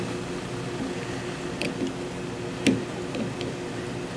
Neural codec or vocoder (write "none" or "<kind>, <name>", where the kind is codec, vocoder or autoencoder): none